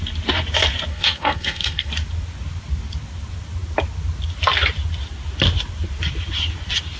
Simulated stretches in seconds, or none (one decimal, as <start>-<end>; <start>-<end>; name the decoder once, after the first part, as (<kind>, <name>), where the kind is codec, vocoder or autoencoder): 0.9-1.9 (codec, SNAC)